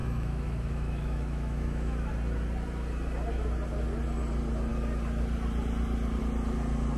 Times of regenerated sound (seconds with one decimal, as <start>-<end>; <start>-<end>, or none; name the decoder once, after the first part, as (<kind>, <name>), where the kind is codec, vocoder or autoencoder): 0.0-2.1 (autoencoder, DAC-VAE)